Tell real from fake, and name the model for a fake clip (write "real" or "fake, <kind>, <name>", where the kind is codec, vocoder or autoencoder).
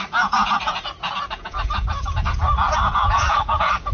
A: fake, vocoder, Vocos